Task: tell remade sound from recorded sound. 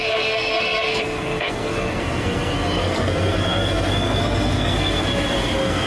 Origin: remade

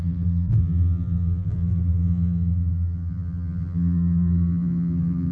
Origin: remade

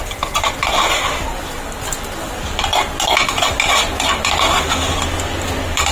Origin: recorded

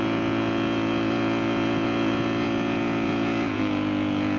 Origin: remade